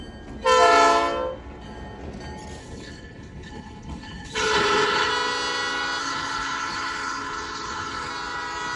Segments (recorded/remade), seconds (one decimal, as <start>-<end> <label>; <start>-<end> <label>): 0.0-2.6 recorded; 2.6-5.1 remade; 5.1-6.0 recorded; 6.0-8.1 remade; 8.1-8.8 recorded